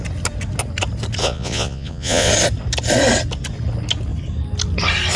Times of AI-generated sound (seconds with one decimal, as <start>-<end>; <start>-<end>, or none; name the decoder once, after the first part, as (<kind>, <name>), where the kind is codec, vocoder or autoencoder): 1.2-2.3 (vocoder, Vocos)